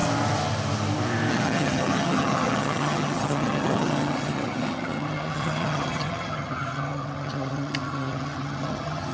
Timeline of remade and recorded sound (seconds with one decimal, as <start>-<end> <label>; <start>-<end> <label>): 0.0-1.3 recorded; 1.3-9.1 remade